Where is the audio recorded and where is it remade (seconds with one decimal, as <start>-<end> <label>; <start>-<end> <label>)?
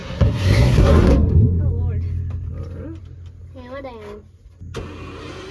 0.0-1.6 remade; 1.6-5.5 recorded